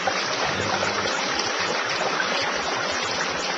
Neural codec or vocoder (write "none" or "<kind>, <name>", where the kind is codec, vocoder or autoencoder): none